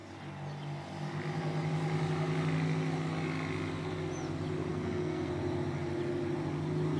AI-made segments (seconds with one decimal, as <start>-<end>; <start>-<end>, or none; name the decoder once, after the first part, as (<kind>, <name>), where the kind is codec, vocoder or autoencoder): 4.7-5.3 (codec, SNAC)